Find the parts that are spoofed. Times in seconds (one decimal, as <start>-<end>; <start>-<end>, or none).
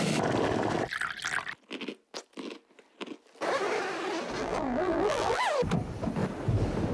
4.4-5.4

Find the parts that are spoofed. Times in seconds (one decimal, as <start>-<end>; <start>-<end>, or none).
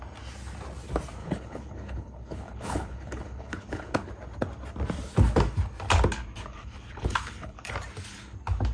1.2-4.1; 6.5-7.7